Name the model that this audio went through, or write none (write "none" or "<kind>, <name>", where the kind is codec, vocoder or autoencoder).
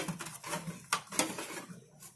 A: none